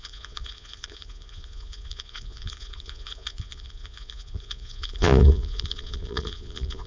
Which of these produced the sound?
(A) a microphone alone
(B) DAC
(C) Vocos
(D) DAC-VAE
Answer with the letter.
C